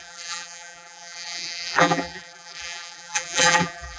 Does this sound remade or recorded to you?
remade